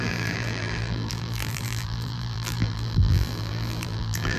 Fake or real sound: fake